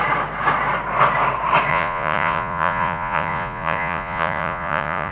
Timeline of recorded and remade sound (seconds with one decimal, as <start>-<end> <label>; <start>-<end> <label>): 0.0-1.7 recorded; 1.7-5.1 remade